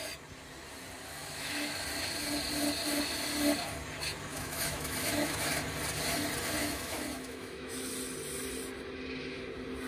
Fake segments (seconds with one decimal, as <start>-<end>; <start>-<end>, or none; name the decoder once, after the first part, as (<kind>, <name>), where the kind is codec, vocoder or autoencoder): 1.2-1.8 (autoencoder, DAC-VAE); 4.3-5.5; 6.6-7.9

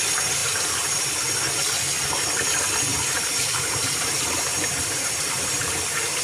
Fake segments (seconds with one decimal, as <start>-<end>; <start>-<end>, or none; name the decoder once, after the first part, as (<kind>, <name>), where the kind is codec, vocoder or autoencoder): 0.4-1.0 (vocoder, BigVGAN v2); 2.9-5.8